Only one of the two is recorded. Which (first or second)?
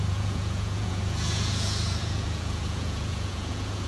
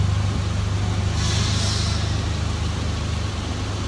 second